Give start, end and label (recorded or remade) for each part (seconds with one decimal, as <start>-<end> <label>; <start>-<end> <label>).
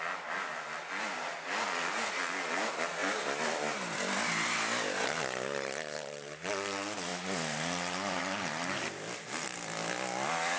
0.0-10.6 recorded